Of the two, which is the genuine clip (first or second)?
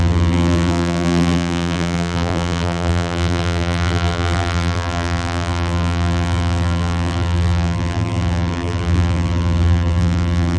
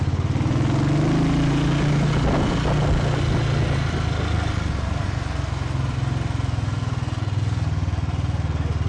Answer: second